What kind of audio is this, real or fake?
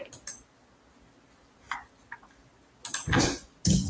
real